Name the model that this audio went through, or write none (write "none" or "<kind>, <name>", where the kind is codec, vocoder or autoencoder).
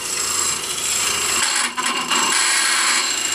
none